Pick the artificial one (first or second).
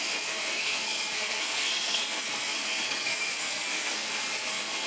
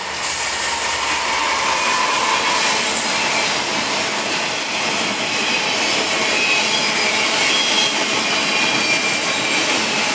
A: first